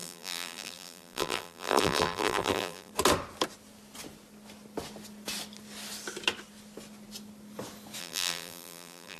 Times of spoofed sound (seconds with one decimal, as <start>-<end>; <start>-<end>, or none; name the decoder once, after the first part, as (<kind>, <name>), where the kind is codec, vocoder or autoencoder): 0.0-2.9 (vocoder, BigVGAN v2); 8.0-9.2